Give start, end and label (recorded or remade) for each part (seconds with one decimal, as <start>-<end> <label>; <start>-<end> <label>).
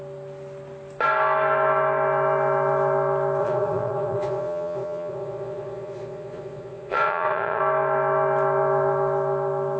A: 0.0-3.4 recorded; 3.4-7.6 remade; 7.6-9.8 recorded